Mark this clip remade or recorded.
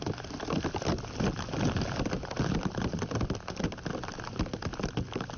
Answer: recorded